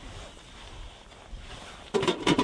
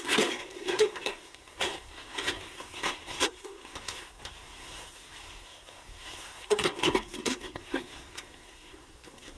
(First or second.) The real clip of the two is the first